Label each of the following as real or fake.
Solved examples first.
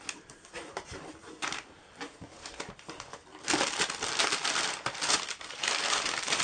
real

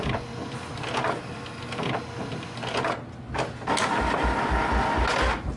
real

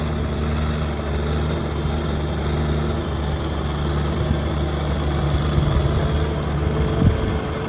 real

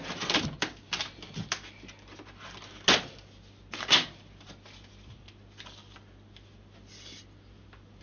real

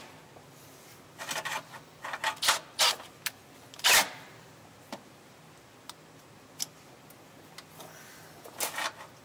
real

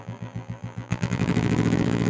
fake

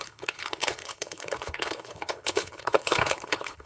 fake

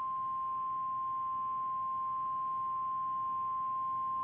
real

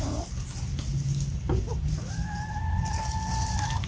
real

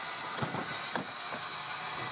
real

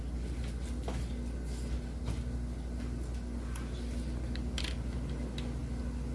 real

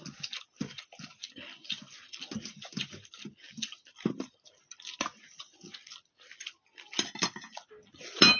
fake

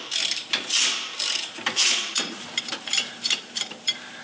fake